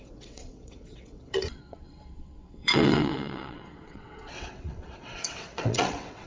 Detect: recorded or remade remade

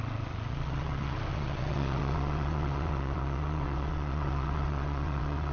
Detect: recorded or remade remade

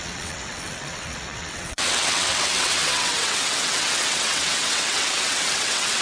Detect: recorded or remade remade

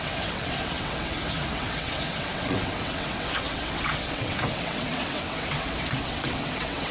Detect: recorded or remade remade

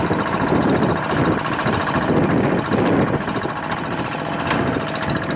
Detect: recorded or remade recorded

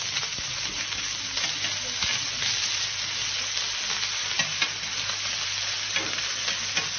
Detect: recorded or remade recorded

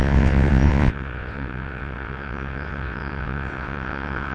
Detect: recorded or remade remade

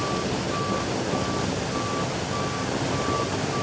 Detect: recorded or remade recorded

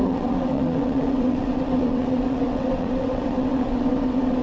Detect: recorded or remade remade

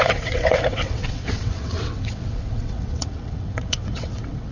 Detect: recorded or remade remade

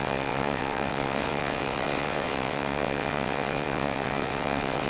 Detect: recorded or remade remade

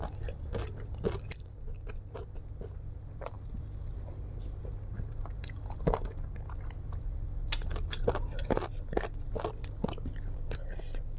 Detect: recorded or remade recorded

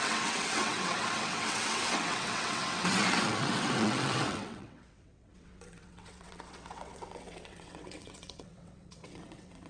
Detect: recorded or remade remade